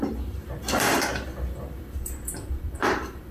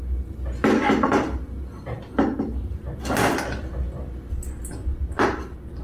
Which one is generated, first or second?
first